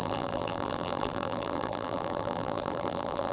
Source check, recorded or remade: remade